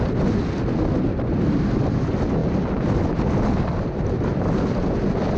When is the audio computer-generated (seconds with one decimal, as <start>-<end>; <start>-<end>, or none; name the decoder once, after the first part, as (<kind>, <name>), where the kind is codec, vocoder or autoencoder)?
none